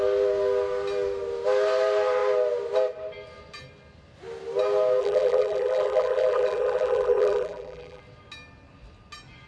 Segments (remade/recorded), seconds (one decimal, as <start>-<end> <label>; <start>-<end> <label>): 0.0-5.0 recorded; 5.0-8.0 remade; 8.0-9.5 recorded